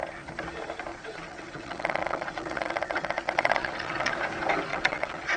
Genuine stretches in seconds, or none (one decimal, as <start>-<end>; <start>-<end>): 0.0-0.9; 4.1-4.7